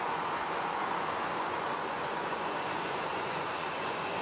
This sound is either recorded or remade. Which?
remade